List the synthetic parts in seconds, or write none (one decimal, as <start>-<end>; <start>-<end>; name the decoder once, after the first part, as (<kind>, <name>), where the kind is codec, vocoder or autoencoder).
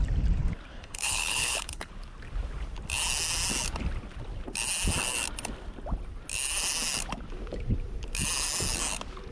0.7-1.9 (codec, HILCodec)